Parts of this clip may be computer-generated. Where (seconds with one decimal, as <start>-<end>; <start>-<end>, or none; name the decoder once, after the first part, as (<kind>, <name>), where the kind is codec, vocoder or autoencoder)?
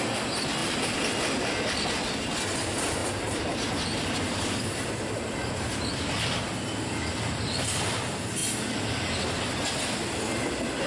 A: 3.0-5.9 (vocoder, BigVGAN v2)